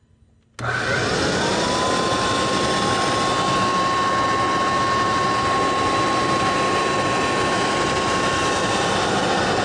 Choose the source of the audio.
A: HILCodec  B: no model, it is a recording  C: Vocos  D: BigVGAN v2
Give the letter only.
B